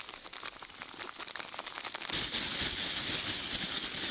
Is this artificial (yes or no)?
no